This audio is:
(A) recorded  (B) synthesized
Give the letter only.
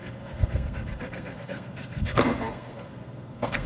B